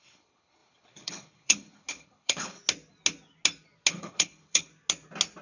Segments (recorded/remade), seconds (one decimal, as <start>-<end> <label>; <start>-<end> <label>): 0.0-2.6 remade; 2.6-3.9 recorded; 3.9-4.7 remade; 4.7-5.4 recorded